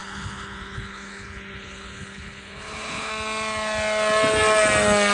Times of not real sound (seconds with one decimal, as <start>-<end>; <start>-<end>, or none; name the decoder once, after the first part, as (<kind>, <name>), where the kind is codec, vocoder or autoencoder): 0.0-3.1 (codec, HILCodec)